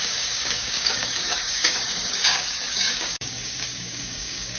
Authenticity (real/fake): fake